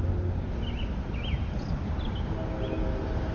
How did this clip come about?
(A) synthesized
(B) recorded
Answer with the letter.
B